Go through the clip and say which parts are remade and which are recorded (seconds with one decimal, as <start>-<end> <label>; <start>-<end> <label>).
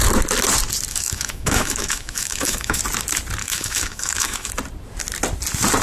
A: 0.0-0.9 recorded; 0.9-2.8 remade; 2.8-3.4 recorded; 3.4-4.5 remade; 4.5-5.8 recorded